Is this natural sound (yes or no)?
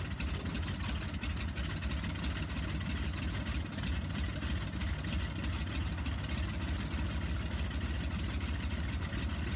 yes